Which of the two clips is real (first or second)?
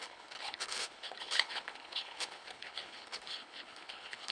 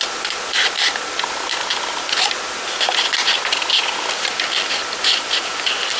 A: second